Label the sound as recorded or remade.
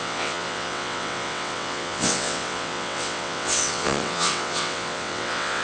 remade